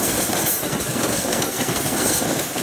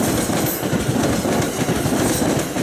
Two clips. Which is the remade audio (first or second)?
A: first